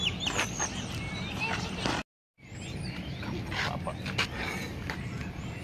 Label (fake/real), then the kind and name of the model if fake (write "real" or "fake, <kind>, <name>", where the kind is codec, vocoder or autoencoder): real